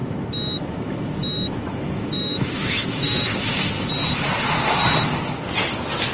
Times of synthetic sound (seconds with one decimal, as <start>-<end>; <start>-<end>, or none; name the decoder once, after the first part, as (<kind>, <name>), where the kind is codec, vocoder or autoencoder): 0.0-3.7 (autoencoder, DAC-VAE)